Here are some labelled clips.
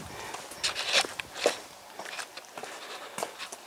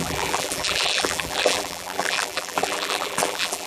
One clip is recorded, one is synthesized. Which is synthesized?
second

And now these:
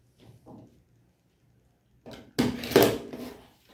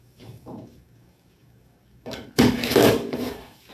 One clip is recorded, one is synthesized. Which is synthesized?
second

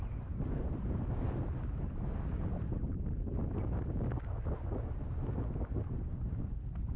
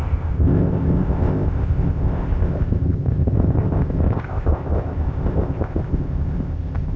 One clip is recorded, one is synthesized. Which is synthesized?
second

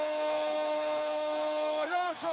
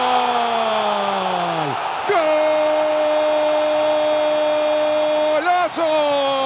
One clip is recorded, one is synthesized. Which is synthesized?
first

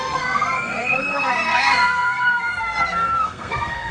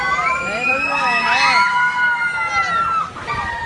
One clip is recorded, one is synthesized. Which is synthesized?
first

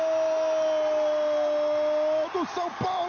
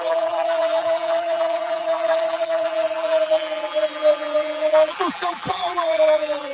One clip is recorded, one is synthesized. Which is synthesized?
second